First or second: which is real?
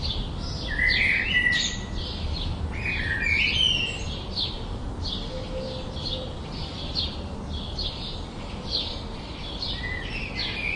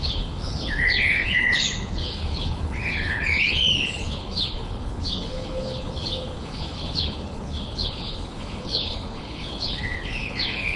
first